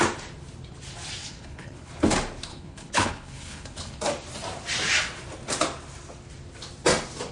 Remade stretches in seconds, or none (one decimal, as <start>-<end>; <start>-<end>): 1.2-1.9; 2.5-4.0